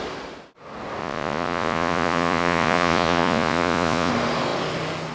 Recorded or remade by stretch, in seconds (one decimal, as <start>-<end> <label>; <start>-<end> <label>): 0.0-1.0 recorded; 1.0-4.1 remade; 4.1-5.1 recorded